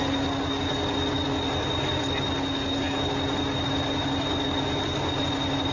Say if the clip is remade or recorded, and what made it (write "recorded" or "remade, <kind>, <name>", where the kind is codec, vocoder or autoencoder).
recorded